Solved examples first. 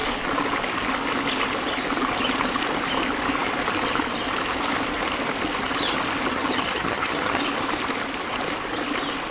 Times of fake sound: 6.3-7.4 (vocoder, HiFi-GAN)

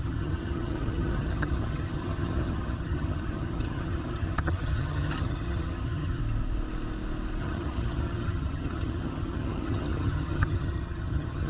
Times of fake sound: 0.0-6.2 (vocoder, HiFi-GAN); 7.4-11.5